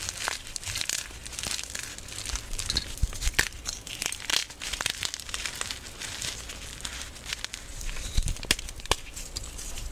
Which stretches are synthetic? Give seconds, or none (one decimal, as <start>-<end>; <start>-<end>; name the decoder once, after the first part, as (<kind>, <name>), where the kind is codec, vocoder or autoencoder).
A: 0.0-1.2 (vocoder, BigVGAN v2); 3.3-9.9